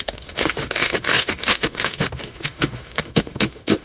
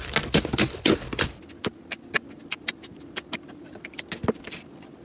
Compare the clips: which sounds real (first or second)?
second